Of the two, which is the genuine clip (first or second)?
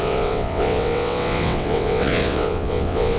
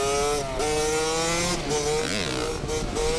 second